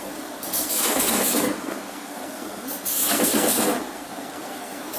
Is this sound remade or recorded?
remade